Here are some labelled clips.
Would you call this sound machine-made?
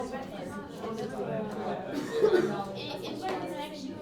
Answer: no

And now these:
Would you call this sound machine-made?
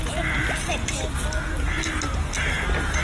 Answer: no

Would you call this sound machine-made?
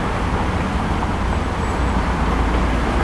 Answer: no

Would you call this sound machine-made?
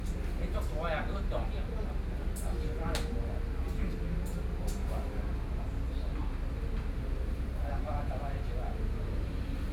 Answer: no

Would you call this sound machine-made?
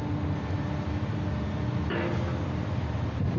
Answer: no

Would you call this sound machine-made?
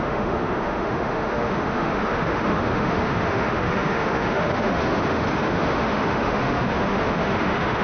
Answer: yes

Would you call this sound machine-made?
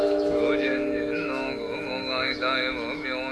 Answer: yes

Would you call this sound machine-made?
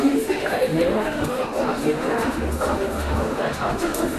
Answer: yes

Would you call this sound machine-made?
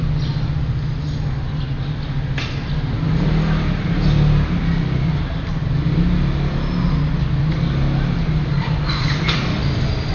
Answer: no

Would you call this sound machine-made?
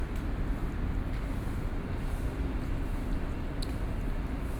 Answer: no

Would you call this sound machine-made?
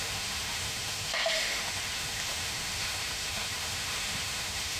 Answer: yes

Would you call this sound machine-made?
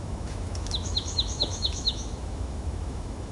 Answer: yes